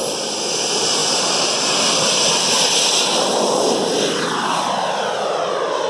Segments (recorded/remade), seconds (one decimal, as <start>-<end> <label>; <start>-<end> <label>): 0.0-5.9 recorded